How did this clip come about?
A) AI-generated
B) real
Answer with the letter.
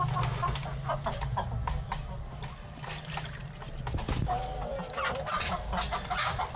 B